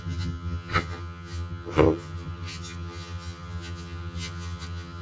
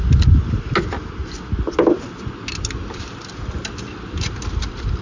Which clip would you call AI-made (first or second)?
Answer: first